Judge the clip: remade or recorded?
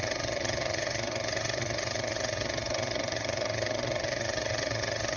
remade